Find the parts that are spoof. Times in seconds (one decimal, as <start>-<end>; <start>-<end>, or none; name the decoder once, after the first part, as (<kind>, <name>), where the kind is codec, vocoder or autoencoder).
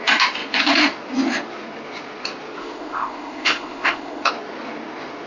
2.6-4.3 (codec, ZipCodec)